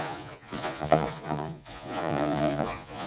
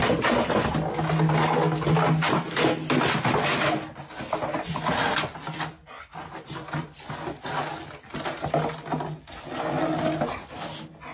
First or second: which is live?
second